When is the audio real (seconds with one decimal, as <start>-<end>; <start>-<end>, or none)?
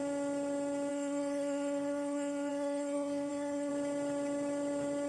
0.0-0.9; 3.7-5.1